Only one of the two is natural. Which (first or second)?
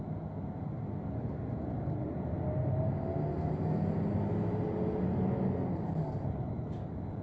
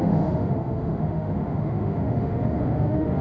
first